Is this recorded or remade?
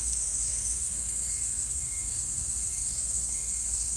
remade